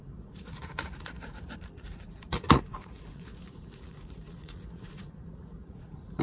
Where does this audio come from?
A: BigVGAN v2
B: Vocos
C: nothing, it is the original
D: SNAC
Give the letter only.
B